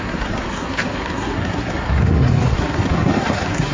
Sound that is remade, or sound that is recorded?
remade